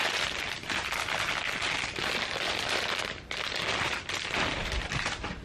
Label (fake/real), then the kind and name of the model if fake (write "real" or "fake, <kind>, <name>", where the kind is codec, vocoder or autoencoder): fake, vocoder, BigVGAN v2